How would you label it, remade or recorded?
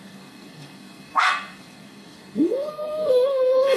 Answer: remade